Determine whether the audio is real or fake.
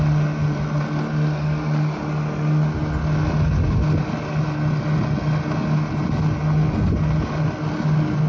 real